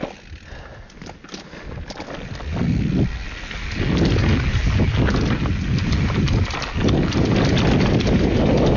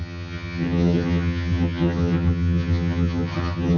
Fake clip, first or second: second